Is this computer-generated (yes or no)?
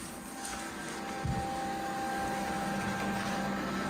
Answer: no